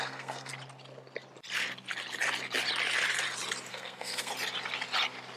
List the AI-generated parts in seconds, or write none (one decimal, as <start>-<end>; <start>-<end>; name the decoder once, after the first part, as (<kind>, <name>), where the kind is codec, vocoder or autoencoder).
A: 0.0-0.5 (codec, SNAC); 3.7-4.3